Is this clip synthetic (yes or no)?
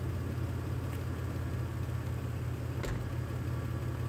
no